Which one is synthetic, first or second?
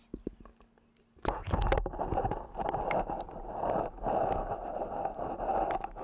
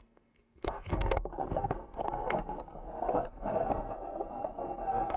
second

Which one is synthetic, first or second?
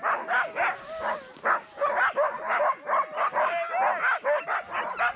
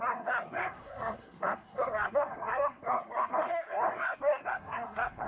second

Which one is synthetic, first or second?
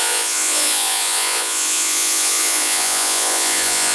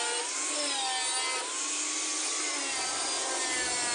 first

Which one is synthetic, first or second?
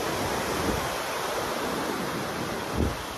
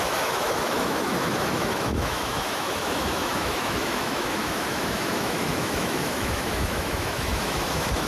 second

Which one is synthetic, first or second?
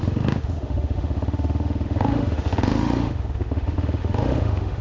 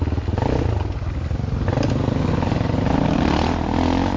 first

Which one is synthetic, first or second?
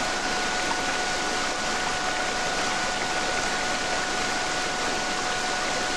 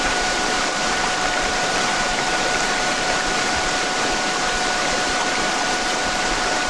second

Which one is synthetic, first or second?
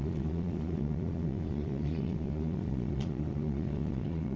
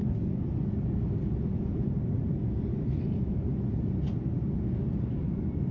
first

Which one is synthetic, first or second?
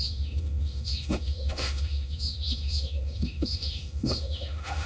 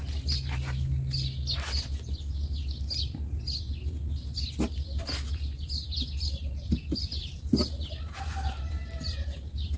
first